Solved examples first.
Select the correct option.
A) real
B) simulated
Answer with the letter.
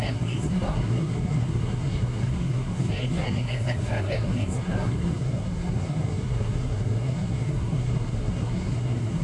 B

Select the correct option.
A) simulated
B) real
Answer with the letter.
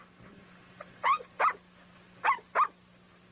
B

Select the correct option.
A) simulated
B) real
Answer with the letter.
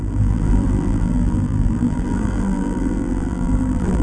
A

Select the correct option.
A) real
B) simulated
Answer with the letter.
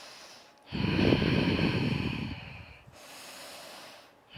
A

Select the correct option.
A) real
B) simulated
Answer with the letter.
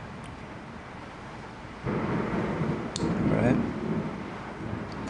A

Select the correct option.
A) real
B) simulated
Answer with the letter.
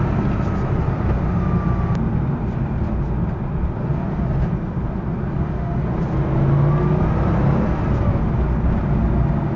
A